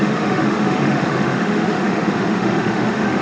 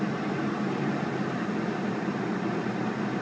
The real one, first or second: second